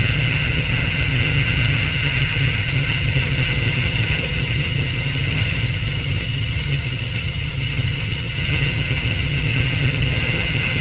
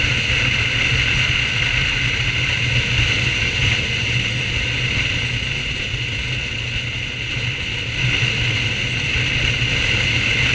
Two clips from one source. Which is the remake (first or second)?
first